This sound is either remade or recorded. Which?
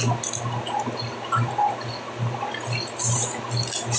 recorded